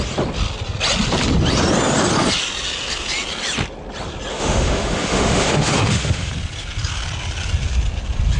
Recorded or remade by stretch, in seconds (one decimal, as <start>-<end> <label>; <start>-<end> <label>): 0.0-4.3 recorded; 4.3-6.3 remade; 6.3-8.4 recorded